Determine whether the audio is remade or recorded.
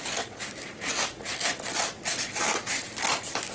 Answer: recorded